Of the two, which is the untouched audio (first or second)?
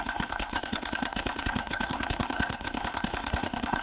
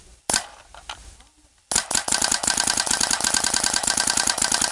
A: second